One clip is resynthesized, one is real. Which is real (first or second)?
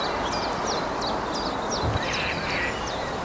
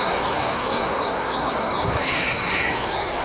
first